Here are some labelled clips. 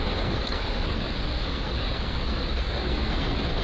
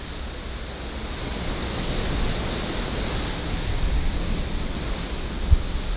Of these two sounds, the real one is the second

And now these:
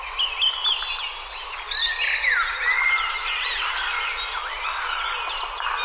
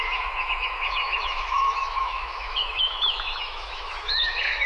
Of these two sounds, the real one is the first